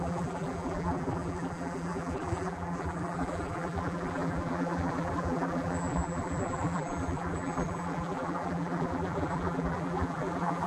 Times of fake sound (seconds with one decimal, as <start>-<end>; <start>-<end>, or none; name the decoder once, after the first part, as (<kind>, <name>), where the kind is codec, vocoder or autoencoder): 0.0-10.7 (vocoder, BigVGAN v2)

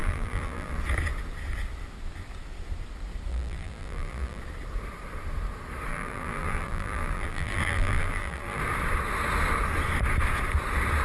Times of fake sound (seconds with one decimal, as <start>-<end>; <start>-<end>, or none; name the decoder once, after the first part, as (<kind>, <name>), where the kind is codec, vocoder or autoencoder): 0.0-0.8 (vocoder, BigVGAN v2); 3.3-4.4; 5.9-8.6

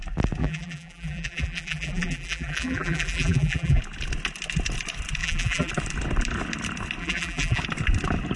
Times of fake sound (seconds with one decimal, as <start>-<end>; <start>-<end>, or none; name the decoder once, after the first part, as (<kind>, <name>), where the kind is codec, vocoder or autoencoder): 0.4-3.8 (vocoder, BigVGAN v2); 5.2-5.7; 7.0-7.6

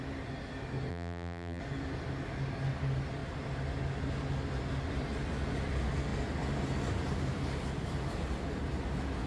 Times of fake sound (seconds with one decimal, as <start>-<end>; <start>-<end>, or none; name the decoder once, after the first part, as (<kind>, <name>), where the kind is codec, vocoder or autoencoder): 0.9-1.6 (vocoder, BigVGAN v2)

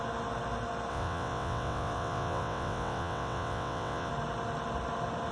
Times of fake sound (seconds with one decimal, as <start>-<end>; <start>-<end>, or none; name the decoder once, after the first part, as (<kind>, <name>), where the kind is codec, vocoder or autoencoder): 0.9-4.1 (vocoder, WaveNeXt)

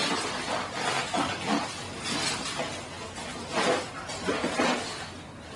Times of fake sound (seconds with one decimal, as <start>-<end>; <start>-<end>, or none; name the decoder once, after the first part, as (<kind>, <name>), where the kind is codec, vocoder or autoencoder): none

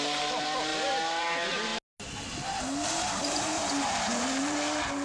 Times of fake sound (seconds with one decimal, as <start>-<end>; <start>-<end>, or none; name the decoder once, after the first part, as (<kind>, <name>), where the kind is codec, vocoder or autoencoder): 0.0-1.7 (vocoder, BigVGAN v2); 2.6-5.0

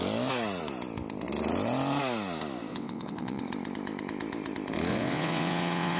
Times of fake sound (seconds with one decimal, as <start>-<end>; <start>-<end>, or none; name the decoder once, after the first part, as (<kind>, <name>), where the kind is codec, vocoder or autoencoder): 2.7-3.4 (vocoder, WaveNeXt); 4.9-6.0